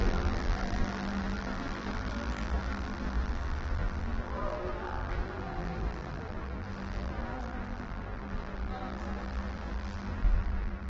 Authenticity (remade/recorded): remade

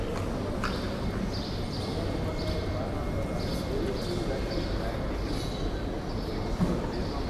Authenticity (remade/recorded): recorded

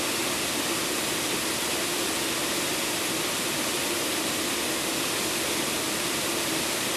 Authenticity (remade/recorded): recorded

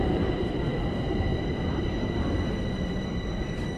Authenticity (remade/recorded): remade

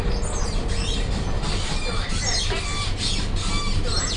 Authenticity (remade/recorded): recorded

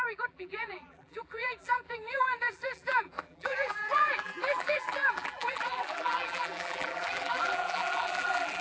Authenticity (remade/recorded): remade